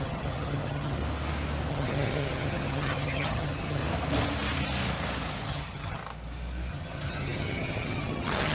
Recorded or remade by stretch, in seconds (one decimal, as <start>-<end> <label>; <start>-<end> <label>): 0.0-1.0 remade; 1.0-1.7 recorded; 1.7-3.8 remade; 3.8-5.5 recorded; 5.5-6.0 remade; 6.0-6.7 recorded; 6.7-8.5 remade